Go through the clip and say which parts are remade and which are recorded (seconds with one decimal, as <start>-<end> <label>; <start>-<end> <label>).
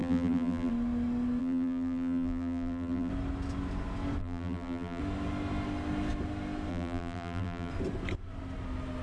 0.0-0.7 remade; 0.7-1.4 recorded; 1.4-3.1 remade; 3.1-4.2 recorded; 4.2-5.0 remade; 5.0-6.7 recorded; 6.7-7.7 remade; 7.7-9.0 recorded